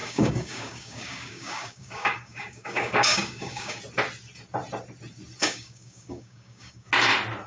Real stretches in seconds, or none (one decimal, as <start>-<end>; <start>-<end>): 3.8-5.4; 6.9-7.5